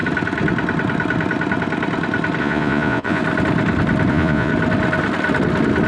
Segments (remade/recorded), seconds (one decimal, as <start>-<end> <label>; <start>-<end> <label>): 0.0-2.4 recorded; 2.4-3.2 remade; 3.2-4.1 recorded; 4.1-4.5 remade; 4.5-5.9 recorded